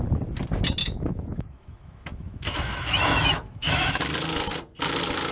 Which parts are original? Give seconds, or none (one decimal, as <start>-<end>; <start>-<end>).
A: 0.0-0.8; 4.0-5.3